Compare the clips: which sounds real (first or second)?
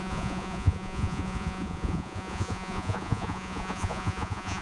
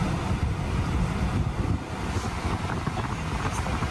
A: second